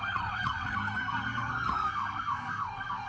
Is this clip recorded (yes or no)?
no